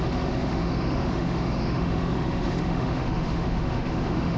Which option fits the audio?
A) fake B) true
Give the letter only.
A